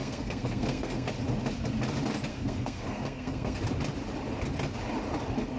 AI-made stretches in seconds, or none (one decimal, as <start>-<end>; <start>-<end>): 0.0-1.1; 2.3-3.6